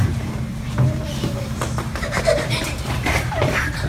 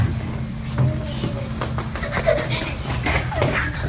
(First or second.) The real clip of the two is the second